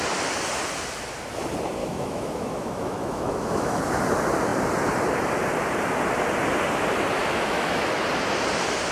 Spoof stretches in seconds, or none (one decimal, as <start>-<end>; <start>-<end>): 1.8-3.8; 7.2-8.0